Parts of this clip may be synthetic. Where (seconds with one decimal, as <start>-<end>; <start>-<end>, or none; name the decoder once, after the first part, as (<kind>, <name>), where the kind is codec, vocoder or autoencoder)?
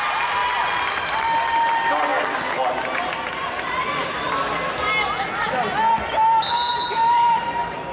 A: 6.7-7.4 (vocoder, BigVGAN v2)